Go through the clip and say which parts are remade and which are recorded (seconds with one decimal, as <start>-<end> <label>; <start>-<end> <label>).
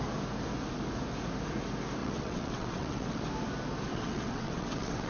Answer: 0.0-2.0 recorded; 2.0-3.2 remade; 3.2-3.9 recorded; 3.9-5.1 remade